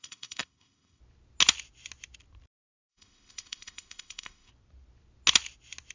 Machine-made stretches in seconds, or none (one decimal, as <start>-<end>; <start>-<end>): 0.0-1.0; 2.9-4.5